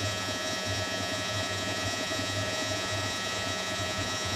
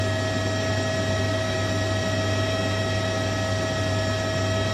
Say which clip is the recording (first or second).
second